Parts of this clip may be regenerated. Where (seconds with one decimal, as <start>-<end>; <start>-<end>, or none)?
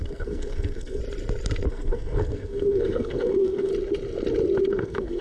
0.0-1.0; 1.7-3.7; 4.7-5.2